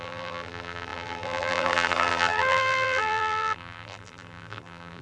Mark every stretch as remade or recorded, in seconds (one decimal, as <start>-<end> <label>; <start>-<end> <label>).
0.0-5.0 remade